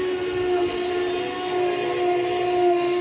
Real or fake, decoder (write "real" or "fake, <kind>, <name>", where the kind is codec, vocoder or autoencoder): real